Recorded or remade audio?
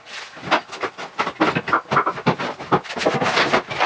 recorded